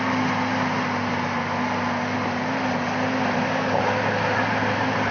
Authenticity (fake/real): real